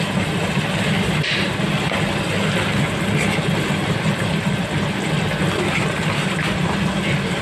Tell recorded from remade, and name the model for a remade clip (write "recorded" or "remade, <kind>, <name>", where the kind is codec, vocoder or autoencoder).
recorded